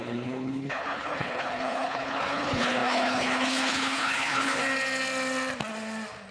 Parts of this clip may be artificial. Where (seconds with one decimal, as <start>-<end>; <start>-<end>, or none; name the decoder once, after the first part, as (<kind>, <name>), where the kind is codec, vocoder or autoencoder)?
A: 0.0-4.6 (codec, HILCodec)